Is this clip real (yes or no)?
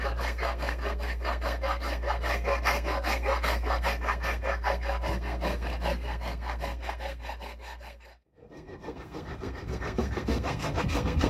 no